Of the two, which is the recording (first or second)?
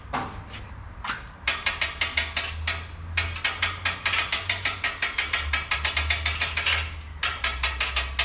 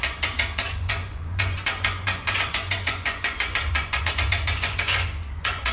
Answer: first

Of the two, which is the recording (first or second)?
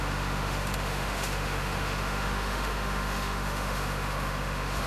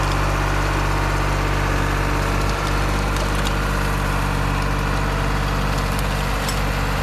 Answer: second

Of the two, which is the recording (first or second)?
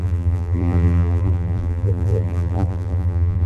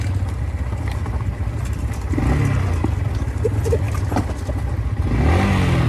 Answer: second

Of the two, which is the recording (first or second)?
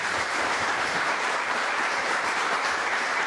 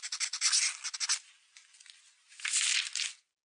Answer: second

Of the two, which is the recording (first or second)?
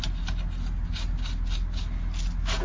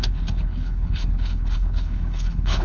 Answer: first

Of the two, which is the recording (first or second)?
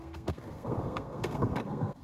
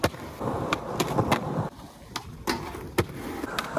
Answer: second